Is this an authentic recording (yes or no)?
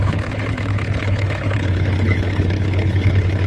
no